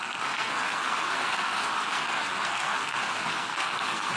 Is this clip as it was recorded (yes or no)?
no